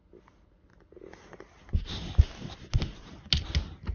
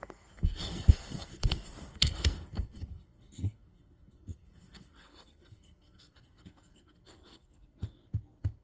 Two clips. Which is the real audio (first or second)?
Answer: first